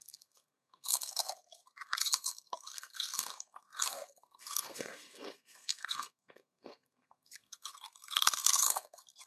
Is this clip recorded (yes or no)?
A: no